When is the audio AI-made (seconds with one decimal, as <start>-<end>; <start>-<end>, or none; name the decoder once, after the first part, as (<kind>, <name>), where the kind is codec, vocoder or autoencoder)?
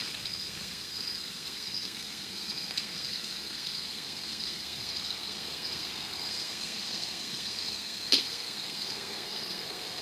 0.0-10.0 (codec, SNAC)